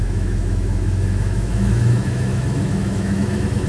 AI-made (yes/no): yes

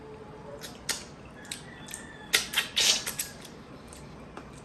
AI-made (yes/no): no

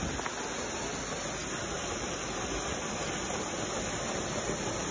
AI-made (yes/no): no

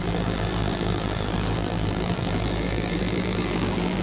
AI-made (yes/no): yes